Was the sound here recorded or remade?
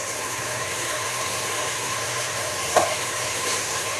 remade